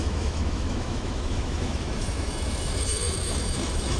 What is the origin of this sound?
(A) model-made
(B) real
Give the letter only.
A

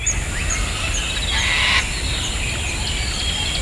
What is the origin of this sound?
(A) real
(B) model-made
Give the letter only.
A